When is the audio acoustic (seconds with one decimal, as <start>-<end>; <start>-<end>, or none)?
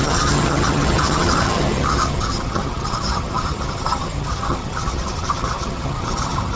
none